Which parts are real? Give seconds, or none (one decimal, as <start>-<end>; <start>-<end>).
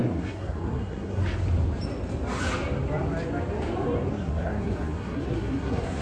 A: 1.2-4.1